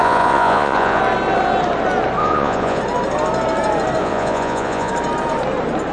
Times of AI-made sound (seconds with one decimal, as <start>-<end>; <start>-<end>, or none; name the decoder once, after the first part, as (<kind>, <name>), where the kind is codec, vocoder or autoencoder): 0.0-1.0 (vocoder, Vocos); 2.2-2.8; 4.0-4.9